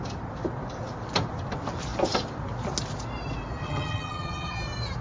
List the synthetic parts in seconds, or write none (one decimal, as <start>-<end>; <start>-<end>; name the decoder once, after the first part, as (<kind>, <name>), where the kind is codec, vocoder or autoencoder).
3.6-4.6 (vocoder, HiFi-GAN)